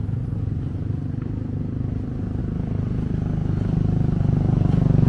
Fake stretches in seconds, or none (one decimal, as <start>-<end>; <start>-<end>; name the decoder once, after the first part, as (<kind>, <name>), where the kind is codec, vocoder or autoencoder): none